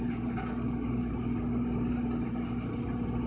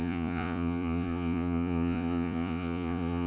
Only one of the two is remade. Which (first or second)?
second